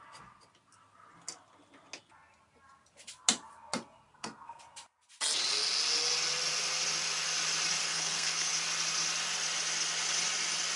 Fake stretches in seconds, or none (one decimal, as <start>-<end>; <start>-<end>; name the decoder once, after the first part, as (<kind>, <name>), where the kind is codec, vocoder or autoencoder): 4.1-4.6 (codec, SNAC); 7.8-8.5